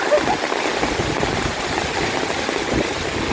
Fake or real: real